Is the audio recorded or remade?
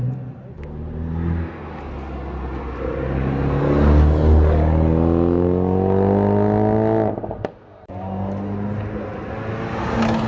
recorded